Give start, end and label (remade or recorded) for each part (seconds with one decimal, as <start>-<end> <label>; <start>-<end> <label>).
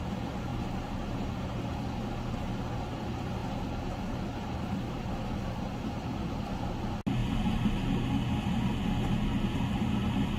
0.0-0.5 recorded; 0.5-1.6 remade; 1.6-3.4 recorded; 3.4-5.0 remade; 5.0-10.4 recorded